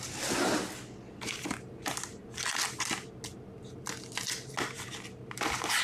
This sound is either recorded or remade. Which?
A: recorded